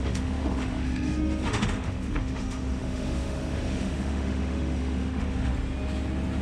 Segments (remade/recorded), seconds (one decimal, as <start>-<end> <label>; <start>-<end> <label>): 0.0-5.5 remade; 5.5-6.4 recorded